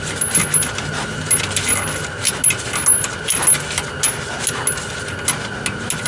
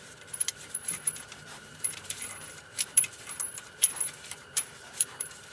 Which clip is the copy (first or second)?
second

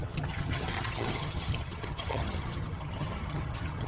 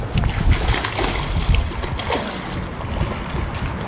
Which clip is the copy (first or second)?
first